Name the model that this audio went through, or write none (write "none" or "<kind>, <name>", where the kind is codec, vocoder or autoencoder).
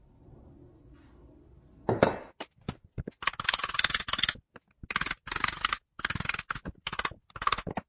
none